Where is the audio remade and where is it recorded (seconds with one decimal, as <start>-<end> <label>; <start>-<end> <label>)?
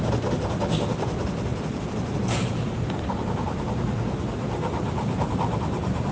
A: 0.0-6.1 recorded